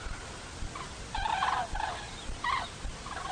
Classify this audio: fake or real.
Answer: real